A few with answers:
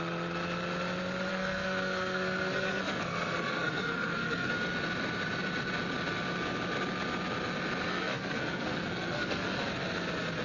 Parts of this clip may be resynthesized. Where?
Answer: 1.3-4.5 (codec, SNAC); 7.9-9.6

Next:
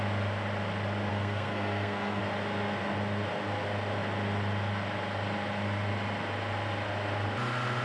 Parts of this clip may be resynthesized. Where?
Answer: 1.1-2.2 (codec, SNAC)

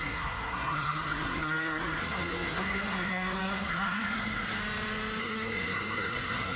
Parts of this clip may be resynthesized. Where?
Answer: 0.0-4.6 (codec, SNAC); 5.2-6.6

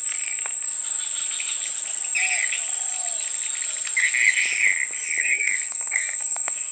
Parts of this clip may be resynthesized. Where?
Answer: 5.2-6.7 (codec, SNAC)

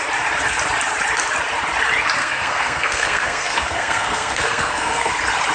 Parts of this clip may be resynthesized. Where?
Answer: 2.2-5.1 (codec, SNAC)

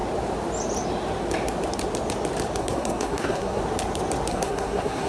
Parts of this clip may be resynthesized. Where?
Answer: 2.6-3.6 (codec, SNAC); 4.3-5.1

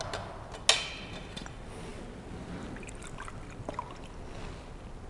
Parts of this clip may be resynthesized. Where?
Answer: none